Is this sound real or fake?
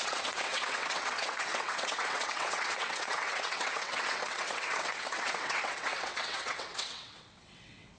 fake